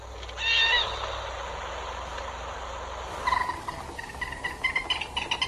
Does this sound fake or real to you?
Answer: real